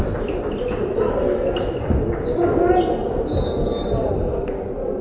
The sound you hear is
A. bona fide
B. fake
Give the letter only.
A